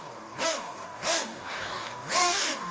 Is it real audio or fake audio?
fake